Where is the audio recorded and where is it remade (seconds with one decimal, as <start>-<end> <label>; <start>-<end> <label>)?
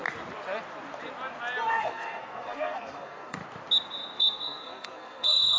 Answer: 0.0-1.7 recorded; 1.7-3.4 remade; 3.4-4.2 recorded; 4.2-5.6 remade